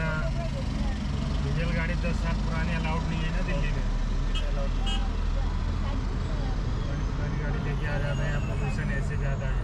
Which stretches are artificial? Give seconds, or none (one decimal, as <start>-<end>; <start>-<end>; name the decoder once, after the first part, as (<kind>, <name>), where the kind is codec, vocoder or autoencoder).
none